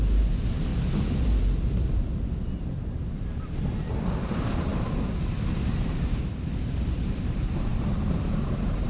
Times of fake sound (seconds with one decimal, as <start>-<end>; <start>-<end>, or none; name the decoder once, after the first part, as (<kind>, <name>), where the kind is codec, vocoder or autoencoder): 0.0-0.7 (vocoder, BigVGAN v2); 4.3-4.7; 5.5-8.9